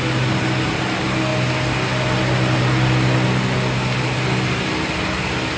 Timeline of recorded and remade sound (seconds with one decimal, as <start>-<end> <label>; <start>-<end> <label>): 0.0-5.6 recorded